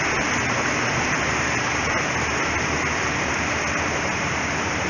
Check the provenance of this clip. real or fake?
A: real